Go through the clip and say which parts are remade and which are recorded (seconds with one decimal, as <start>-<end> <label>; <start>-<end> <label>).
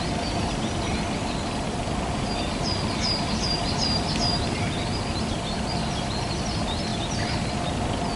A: 0.0-8.2 recorded